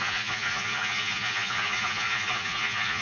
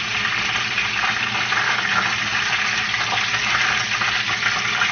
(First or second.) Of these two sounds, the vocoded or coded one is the first